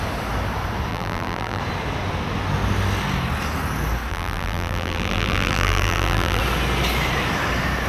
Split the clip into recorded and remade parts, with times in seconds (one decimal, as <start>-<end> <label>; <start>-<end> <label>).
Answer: 0.0-0.9 recorded; 0.9-1.6 remade; 1.6-4.1 recorded; 4.1-6.4 remade; 6.4-7.9 recorded